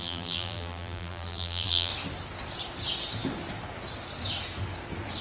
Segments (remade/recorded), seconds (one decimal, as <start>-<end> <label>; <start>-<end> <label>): 0.0-1.9 remade; 1.9-5.2 recorded